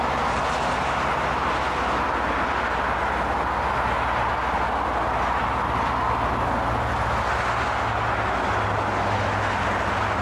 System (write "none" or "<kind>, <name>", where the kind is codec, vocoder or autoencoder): none